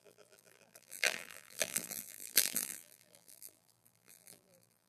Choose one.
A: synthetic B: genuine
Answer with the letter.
A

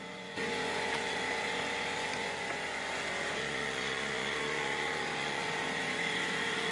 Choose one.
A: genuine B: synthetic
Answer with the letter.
B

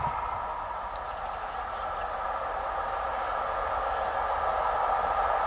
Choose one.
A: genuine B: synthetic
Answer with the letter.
A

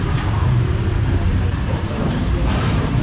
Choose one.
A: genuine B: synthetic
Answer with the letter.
B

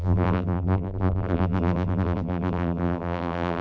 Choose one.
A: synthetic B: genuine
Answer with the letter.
A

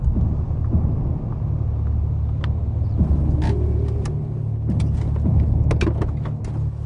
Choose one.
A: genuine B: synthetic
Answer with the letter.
A